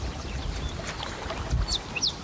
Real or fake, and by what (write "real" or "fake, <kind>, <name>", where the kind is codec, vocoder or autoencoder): real